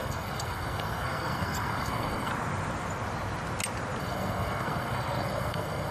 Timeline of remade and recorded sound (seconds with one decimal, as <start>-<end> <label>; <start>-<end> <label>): 0.0-2.3 remade; 2.3-4.0 recorded; 4.0-5.9 remade